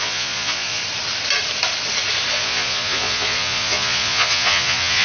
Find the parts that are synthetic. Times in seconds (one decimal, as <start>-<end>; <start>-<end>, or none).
0.0-0.8; 2.3-5.0